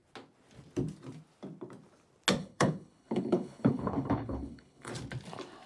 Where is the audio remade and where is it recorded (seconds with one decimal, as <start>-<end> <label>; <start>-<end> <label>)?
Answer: 0.0-2.4 recorded; 2.4-4.9 remade; 4.9-5.7 recorded